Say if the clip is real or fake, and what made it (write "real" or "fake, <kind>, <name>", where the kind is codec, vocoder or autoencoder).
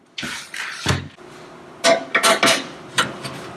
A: real